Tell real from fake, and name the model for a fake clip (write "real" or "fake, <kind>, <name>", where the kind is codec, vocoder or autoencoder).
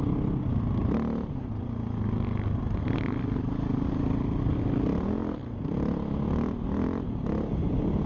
real